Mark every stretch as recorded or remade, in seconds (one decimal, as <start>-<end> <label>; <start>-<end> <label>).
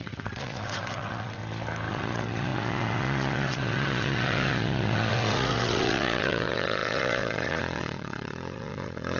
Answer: 0.0-1.4 remade; 1.4-1.9 recorded; 1.9-9.2 remade